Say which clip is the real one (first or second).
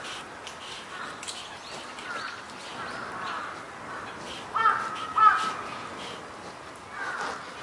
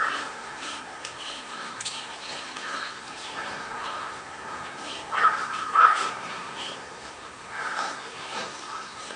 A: first